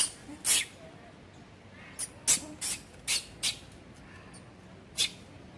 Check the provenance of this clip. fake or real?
real